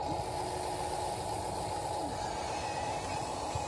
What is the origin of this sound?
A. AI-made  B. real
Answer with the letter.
B